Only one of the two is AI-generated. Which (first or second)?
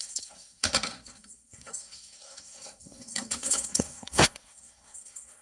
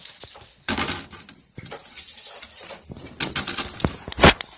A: first